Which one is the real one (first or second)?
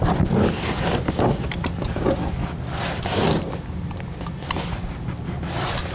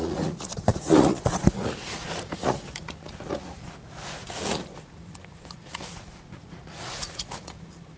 first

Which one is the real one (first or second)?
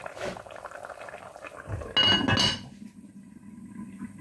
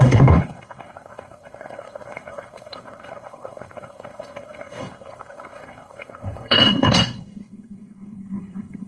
first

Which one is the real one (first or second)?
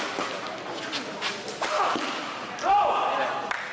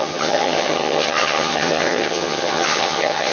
first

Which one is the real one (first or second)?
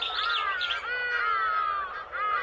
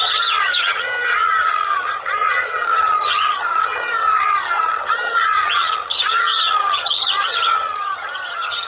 first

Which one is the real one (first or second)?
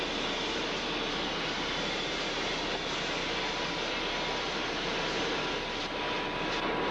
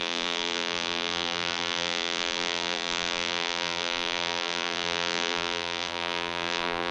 first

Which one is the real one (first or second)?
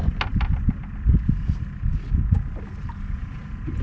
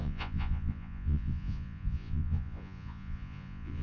first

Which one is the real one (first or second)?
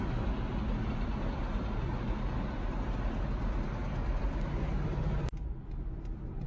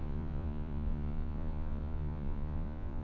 first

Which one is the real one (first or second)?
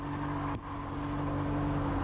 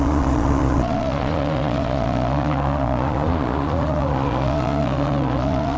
first